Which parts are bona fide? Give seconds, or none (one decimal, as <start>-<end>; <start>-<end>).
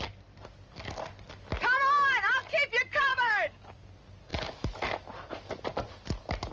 0.0-3.1; 3.9-6.5